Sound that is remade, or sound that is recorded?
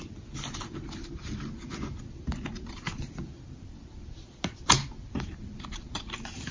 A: recorded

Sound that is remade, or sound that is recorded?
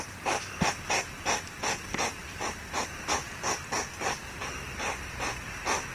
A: remade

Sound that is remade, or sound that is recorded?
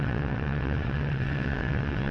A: remade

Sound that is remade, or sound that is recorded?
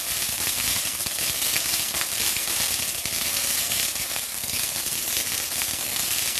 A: remade